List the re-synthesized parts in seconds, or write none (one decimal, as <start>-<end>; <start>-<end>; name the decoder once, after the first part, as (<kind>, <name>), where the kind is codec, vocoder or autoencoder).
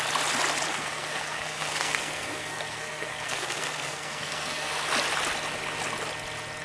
0.7-4.7 (codec, SNAC)